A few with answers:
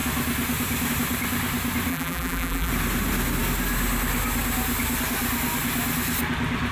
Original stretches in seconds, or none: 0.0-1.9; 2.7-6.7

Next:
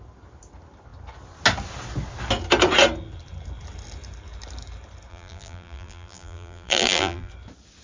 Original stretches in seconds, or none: 0.0-5.1; 7.3-7.8

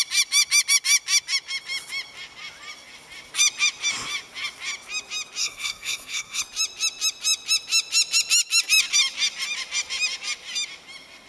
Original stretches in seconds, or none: 0.0-5.4; 6.4-11.3